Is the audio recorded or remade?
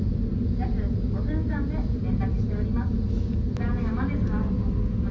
recorded